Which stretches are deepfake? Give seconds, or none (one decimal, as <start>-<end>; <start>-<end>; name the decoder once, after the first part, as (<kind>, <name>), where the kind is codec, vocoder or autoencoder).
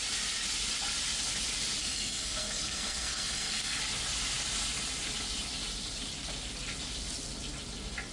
1.8-3.8 (codec, SNAC)